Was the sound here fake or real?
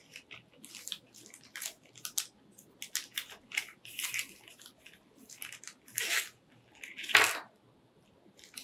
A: real